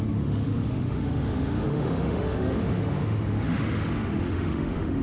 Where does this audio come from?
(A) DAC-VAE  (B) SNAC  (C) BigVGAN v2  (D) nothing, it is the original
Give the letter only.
A